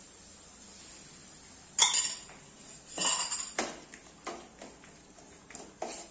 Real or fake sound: real